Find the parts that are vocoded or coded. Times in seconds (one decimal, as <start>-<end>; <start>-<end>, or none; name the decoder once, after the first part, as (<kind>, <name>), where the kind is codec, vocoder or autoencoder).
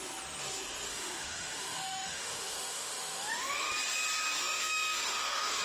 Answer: 0.9-3.7 (autoencoder, DAC-VAE); 4.4-5.6